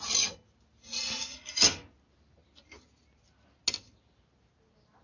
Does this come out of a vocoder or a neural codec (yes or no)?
no